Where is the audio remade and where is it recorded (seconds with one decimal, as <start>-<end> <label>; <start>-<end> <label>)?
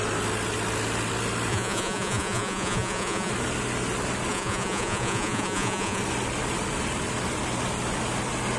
0.0-1.5 recorded; 1.5-3.3 remade; 3.3-4.3 recorded; 4.3-6.0 remade; 6.0-8.6 recorded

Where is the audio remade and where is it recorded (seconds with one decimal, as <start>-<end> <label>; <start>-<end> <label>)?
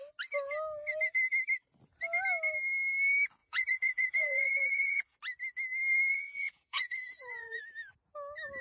0.0-3.4 recorded; 3.4-5.2 remade; 5.2-6.1 recorded; 6.1-7.6 remade; 7.6-8.6 recorded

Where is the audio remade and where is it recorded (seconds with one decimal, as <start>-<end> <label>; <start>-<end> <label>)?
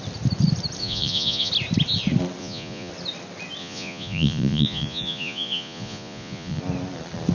0.0-0.8 recorded; 0.8-1.5 remade; 1.5-2.4 recorded; 2.4-2.9 remade; 2.9-3.6 recorded; 3.6-6.6 remade; 6.6-7.3 recorded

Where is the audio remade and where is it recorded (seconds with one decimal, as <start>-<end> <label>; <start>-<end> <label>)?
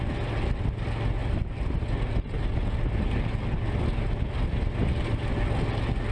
0.0-6.1 recorded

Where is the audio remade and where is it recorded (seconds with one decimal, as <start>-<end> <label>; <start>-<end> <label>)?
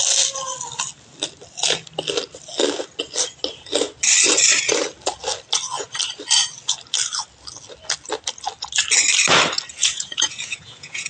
0.0-9.8 recorded; 9.8-11.1 remade